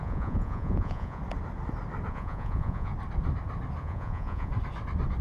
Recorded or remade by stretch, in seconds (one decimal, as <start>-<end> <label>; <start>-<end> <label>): 0.0-1.2 remade; 1.2-2.1 recorded; 2.1-2.9 remade; 2.9-3.8 recorded; 3.8-4.5 remade; 4.5-5.2 recorded